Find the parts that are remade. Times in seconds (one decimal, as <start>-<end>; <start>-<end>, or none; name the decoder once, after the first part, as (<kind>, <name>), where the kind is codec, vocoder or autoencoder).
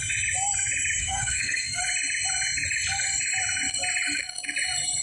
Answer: 1.0-1.8 (codec, SNAC)